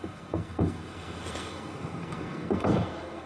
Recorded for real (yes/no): no